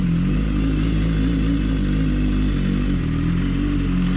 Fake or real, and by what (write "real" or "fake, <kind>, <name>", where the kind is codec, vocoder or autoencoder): real